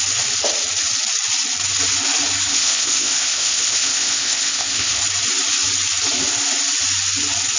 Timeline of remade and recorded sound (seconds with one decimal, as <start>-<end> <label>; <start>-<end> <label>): 0.0-2.5 recorded; 2.5-5.0 remade; 5.0-7.6 recorded